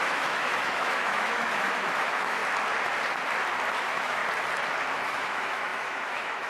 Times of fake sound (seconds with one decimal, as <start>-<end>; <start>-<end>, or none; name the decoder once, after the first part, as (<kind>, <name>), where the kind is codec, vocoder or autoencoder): 0.0-2.4 (autoencoder, DAC-VAE); 3.8-4.2; 4.9-6.5